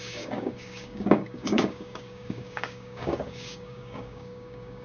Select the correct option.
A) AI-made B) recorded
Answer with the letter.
A